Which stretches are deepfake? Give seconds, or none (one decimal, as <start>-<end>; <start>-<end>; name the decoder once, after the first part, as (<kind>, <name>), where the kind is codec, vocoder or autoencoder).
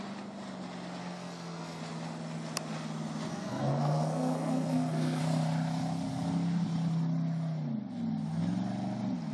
1.0-1.8 (codec, SNAC); 3.3-5.2